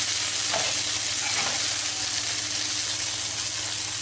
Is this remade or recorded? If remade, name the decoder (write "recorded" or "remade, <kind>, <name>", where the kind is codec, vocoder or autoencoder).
recorded